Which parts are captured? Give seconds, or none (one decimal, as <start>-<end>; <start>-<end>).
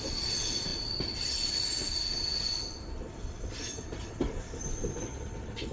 0.0-5.7